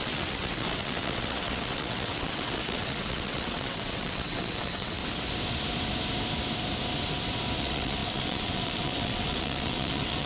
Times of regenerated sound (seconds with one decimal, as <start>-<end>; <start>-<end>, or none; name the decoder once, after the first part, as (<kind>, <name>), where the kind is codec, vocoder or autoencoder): 0.0-5.0 (vocoder, WaveNeXt); 7.6-10.2